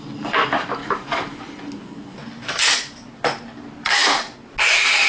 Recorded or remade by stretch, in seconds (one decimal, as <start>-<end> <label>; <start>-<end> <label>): 0.0-0.8 recorded; 0.8-1.4 remade; 1.4-5.1 recorded